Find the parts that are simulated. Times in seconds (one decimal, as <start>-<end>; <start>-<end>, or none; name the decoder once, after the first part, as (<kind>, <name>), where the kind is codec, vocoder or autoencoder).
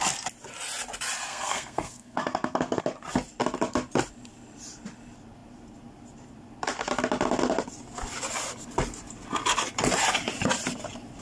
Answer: 1.3-2.8 (codec, SNAC)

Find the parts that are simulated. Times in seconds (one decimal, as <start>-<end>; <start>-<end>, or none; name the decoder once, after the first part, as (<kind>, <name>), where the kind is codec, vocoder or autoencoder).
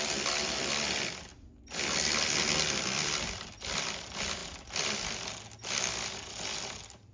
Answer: none